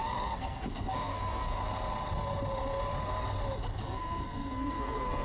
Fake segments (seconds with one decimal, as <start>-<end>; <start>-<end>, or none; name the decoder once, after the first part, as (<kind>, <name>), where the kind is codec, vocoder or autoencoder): 0.0-1.6 (codec, SNAC); 3.8-5.2